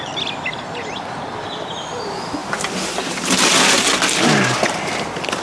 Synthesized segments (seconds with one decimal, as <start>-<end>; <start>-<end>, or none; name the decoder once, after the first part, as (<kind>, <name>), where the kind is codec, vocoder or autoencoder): none

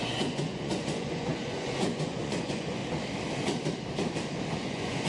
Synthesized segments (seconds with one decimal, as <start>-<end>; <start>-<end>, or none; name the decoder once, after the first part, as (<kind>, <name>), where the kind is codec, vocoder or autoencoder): 0.0-2.8 (vocoder, Vocos); 4.5-5.1

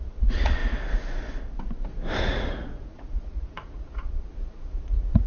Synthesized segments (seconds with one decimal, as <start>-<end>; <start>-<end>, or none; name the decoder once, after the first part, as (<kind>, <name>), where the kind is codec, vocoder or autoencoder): 0.0-0.6 (vocoder, Vocos); 2.2-5.3

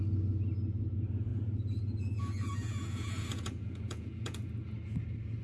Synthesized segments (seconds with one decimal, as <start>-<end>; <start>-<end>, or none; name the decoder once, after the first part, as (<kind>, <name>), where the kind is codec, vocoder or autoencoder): 1.3-4.5 (vocoder, Vocos)

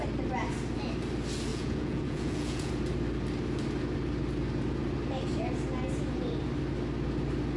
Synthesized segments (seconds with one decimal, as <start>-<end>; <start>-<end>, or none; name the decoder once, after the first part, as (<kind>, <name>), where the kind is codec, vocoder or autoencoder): 1.5-2.7 (vocoder, Vocos)

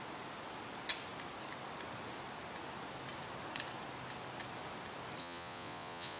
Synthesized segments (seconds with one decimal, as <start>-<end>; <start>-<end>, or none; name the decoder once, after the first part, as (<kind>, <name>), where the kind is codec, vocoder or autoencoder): 5.2-6.2 (vocoder, Vocos)